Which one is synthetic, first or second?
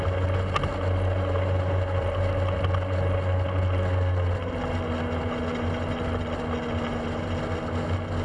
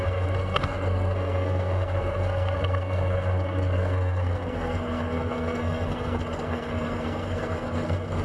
second